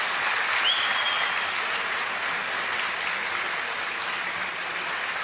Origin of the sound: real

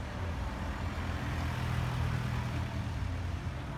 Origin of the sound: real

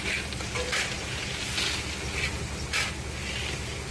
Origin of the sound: real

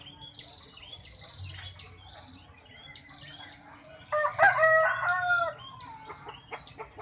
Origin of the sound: real